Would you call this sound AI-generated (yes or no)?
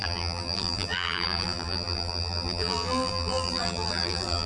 yes